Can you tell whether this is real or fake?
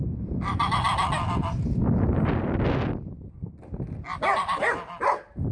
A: real